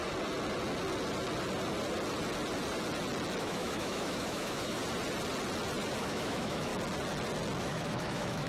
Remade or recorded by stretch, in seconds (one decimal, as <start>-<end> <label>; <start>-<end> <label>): 0.0-3.4 recorded; 3.4-4.8 remade; 4.8-6.0 recorded; 6.0-6.7 remade; 6.7-7.6 recorded; 7.6-8.5 remade